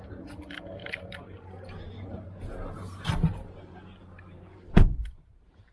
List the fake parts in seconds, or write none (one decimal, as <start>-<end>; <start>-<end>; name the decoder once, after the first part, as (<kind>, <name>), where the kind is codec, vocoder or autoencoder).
0.0-5.7 (vocoder, BigVGAN v2)